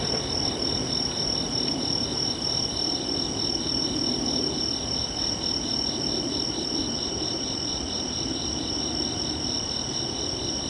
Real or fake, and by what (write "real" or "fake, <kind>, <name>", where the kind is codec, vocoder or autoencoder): real